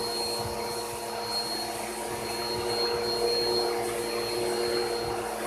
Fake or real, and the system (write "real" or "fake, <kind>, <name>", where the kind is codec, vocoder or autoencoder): real